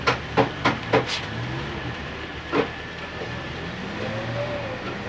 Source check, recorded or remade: recorded